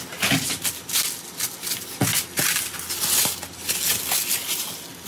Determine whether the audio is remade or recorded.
recorded